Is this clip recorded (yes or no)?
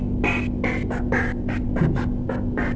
yes